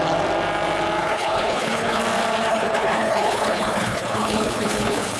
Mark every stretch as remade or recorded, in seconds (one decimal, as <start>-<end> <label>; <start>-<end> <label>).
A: 0.0-1.0 recorded; 1.0-2.0 remade; 2.0-2.5 recorded; 2.5-5.2 remade